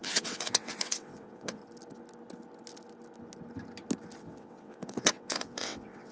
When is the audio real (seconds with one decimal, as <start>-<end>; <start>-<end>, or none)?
1.6-4.2